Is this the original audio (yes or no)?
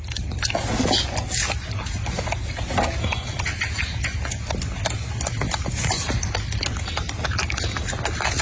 yes